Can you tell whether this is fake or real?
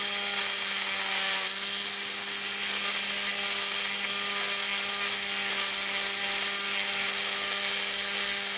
real